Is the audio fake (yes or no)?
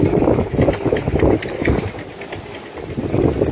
no